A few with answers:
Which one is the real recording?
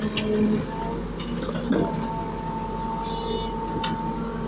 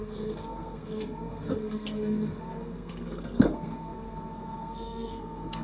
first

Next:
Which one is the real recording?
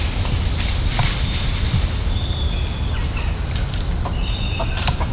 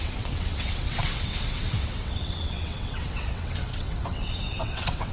first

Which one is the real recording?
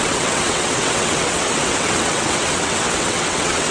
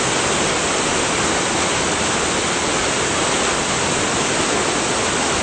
second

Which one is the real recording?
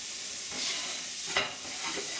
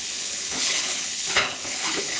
first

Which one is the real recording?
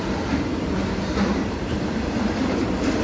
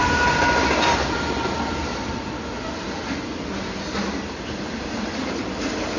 second